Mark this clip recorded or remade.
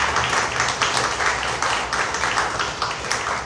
recorded